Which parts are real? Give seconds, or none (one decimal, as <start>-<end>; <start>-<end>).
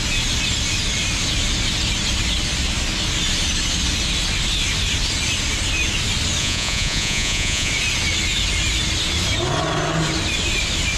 0.0-6.4; 7.7-11.0